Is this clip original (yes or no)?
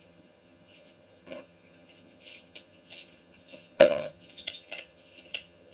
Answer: no